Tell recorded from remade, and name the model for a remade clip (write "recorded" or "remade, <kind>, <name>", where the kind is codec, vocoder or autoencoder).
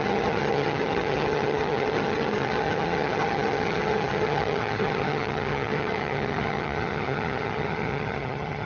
remade, vocoder, HiFi-GAN